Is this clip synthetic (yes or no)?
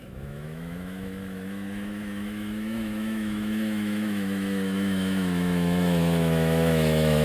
yes